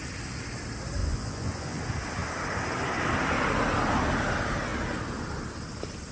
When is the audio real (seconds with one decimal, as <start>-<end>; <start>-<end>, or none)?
0.0-1.0; 1.8-6.1